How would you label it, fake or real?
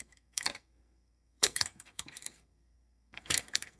fake